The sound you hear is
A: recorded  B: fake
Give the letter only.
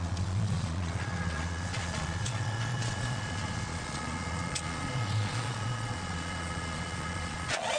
B